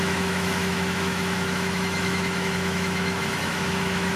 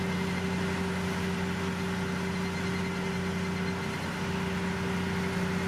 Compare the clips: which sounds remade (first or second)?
first